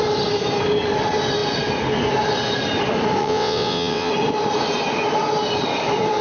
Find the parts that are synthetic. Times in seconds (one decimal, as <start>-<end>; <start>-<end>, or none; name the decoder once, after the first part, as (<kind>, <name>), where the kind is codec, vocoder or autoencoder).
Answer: 3.2-4.1 (vocoder, WaveNeXt)